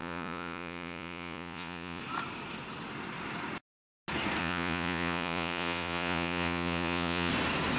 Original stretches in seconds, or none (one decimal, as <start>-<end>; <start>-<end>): 2.0-4.4; 7.3-7.8